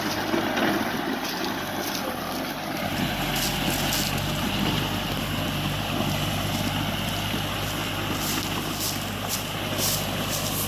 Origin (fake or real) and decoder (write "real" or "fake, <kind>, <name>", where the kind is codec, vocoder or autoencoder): real